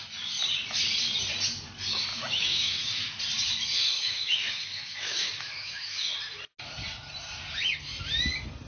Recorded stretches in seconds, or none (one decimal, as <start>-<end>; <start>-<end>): 0.0-2.1; 3.2-3.7; 6.1-8.7